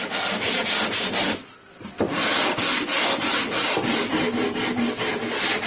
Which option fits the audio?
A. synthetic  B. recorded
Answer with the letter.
B